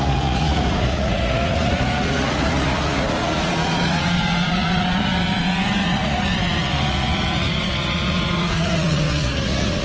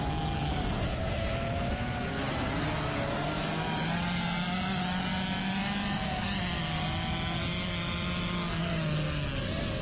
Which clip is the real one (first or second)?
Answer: second